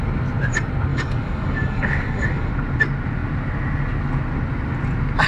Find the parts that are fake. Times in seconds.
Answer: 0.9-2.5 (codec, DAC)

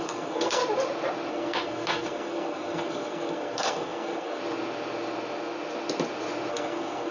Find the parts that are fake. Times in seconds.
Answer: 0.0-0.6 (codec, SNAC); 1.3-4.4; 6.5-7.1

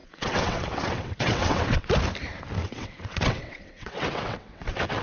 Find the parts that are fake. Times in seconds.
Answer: 0.0-1.9 (vocoder, WaveNeXt); 2.6-5.0

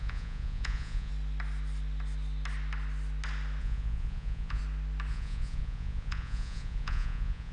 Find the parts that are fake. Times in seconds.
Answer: 0.0-1.1 (vocoder, Vocos); 3.6-4.6; 5.1-7.5

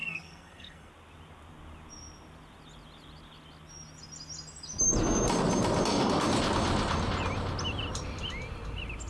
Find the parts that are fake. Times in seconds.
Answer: 0.0-0.9 (codec, SNAC)

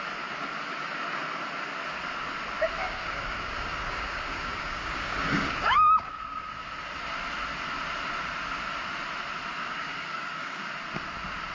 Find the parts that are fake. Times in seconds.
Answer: 2.8-6.2 (codec, DAC); 9.6-10.7

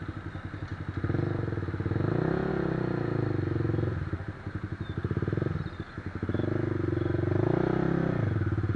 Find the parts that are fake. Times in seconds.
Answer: none